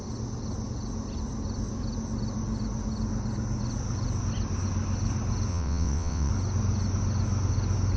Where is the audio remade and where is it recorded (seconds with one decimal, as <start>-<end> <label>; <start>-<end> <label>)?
0.0-5.5 recorded; 5.5-6.3 remade; 6.3-8.0 recorded